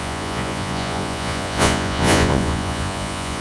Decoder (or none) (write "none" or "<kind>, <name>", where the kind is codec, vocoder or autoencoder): vocoder, Vocos